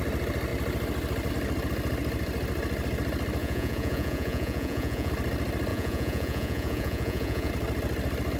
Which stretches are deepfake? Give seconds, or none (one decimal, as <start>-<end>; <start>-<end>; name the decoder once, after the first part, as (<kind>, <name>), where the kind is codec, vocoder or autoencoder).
3.4-5.1 (vocoder, Vocos); 5.7-7.5